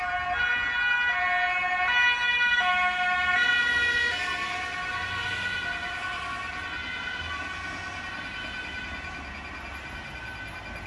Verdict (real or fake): real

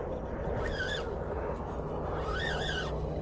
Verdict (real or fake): real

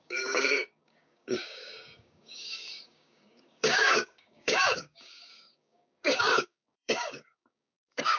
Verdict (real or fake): fake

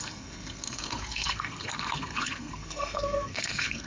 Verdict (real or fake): fake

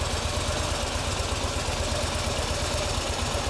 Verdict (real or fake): real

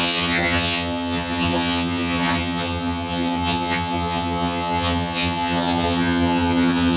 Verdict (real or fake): fake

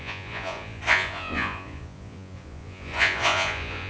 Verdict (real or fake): fake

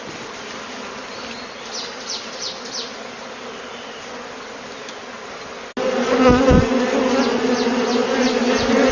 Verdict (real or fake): real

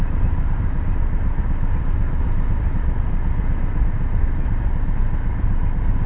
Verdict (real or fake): real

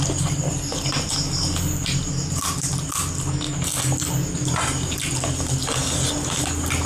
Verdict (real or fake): real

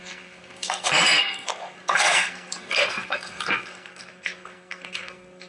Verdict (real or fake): fake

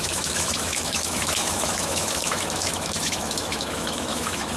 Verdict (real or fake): fake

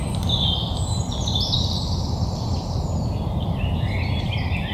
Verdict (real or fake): real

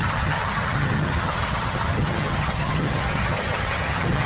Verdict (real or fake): fake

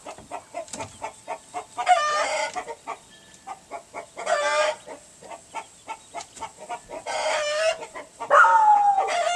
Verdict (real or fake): real